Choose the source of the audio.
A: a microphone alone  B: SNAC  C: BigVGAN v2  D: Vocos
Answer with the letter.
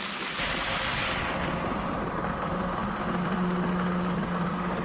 C